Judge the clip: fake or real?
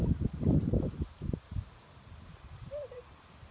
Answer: fake